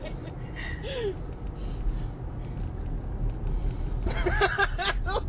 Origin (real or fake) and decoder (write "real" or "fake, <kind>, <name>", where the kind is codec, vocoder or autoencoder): real